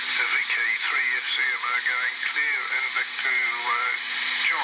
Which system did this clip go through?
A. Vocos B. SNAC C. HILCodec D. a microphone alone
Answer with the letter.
D